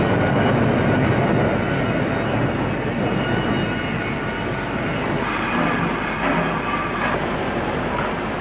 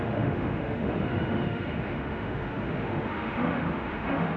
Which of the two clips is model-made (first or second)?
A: second